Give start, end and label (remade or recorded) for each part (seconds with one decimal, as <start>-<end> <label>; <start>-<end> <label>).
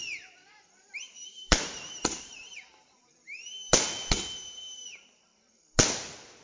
0.0-0.4 recorded; 0.4-3.1 remade; 3.1-6.4 recorded